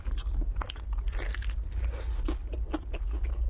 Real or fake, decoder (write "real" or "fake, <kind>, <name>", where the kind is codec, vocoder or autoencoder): real